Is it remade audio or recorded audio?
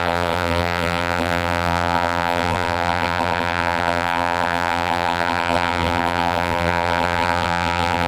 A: remade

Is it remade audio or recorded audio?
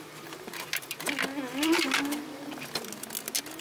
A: recorded